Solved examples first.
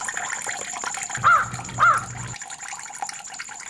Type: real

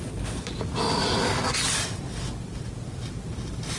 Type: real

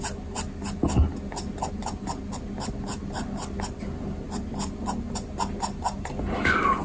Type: real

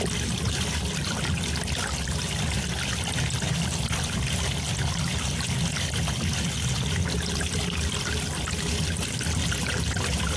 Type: real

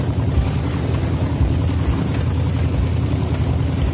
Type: real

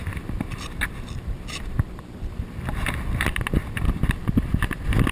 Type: fake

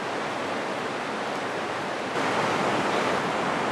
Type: real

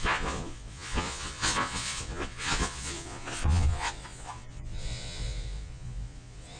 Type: fake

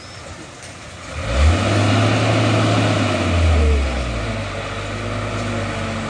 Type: real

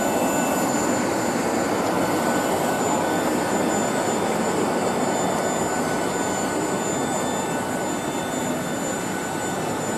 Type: real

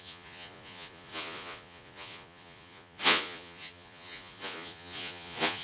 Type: fake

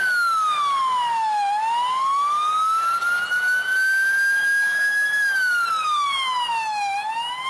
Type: real